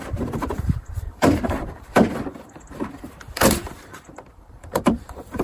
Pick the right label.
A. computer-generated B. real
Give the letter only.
A